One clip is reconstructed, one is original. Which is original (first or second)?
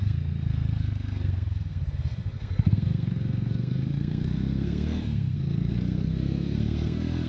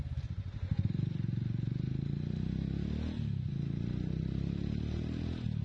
second